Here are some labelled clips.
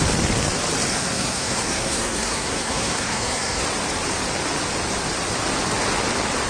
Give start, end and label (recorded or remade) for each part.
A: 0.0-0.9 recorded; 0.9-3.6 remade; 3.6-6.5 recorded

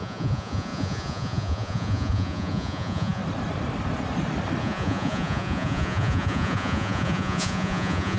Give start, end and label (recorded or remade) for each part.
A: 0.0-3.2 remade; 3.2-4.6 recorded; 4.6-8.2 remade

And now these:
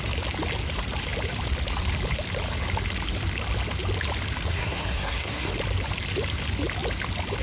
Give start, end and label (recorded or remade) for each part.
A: 0.0-4.5 recorded; 4.5-5.5 remade; 5.5-7.4 recorded

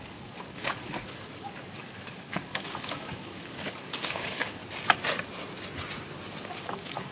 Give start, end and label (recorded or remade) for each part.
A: 0.0-4.6 remade; 4.6-6.4 recorded; 6.4-7.1 remade